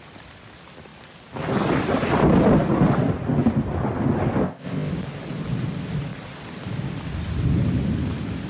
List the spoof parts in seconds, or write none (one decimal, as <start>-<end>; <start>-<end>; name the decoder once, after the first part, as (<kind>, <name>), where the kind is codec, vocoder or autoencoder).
4.4-4.9 (codec, ZipCodec)